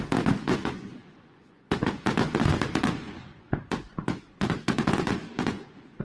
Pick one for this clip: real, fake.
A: fake